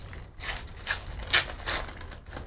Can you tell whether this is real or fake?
real